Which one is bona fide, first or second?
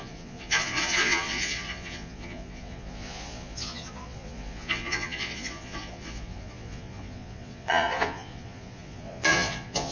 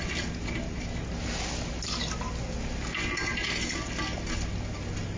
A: second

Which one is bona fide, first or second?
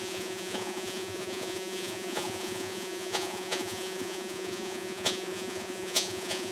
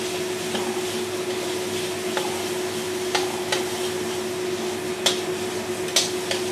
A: second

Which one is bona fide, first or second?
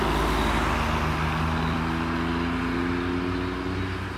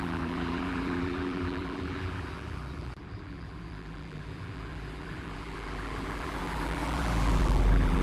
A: first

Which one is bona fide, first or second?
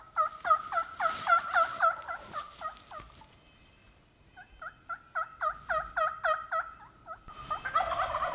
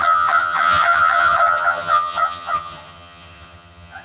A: first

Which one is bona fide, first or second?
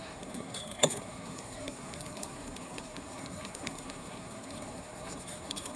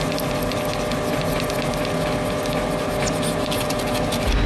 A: second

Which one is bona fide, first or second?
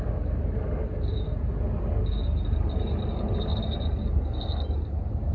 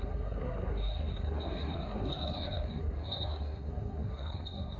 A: first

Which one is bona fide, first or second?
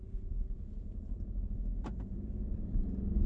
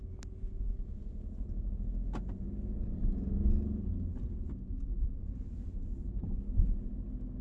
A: second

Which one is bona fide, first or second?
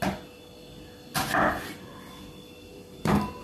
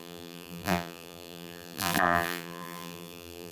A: first